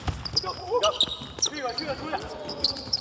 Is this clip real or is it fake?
real